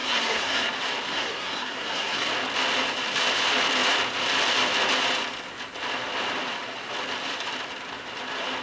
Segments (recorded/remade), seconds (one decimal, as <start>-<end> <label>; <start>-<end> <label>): 0.0-0.7 remade; 0.7-1.1 recorded; 1.1-2.3 remade; 2.3-8.6 recorded